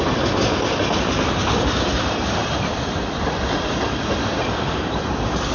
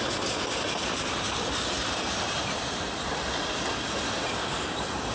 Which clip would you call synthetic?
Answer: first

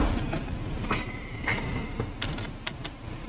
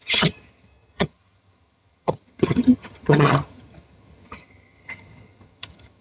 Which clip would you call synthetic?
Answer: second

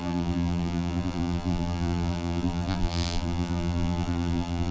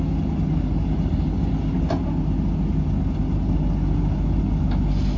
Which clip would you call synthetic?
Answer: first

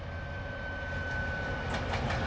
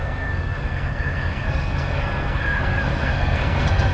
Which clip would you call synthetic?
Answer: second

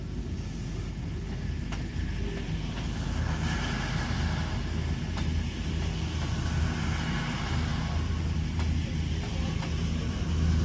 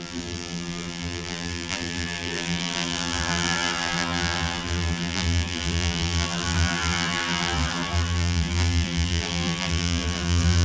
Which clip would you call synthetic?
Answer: second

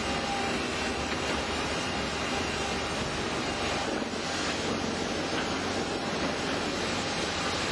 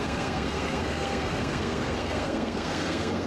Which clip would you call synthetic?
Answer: second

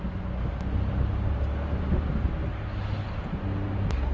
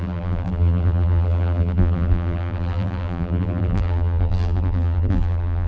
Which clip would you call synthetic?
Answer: second